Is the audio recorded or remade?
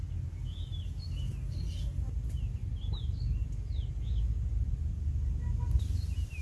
recorded